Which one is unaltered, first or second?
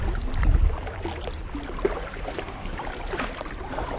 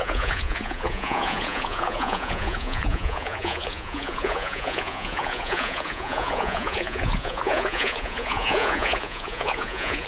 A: first